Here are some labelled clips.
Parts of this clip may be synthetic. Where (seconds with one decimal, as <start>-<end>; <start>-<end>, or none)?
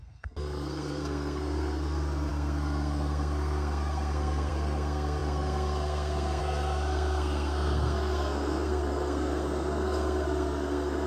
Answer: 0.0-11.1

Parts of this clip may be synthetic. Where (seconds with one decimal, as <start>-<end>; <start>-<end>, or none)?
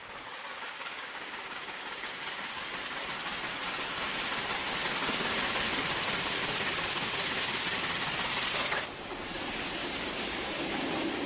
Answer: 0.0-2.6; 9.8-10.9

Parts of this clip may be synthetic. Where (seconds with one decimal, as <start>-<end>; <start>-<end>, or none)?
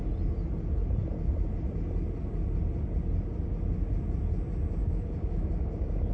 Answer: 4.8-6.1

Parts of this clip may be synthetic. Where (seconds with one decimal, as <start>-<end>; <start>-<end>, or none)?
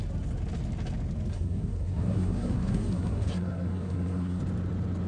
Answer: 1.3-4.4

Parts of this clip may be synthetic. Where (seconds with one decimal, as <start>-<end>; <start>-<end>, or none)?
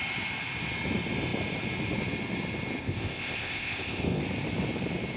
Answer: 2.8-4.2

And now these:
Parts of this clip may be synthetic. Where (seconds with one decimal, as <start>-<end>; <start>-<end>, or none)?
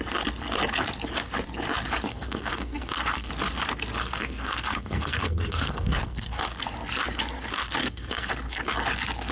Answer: 2.1-3.3; 4.0-6.4; 7.8-8.3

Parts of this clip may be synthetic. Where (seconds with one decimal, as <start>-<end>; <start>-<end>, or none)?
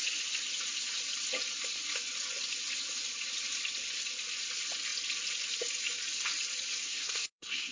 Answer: 6.8-7.7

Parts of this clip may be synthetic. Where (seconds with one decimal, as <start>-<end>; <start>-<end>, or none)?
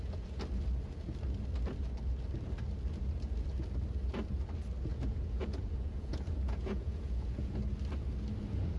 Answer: 4.9-7.6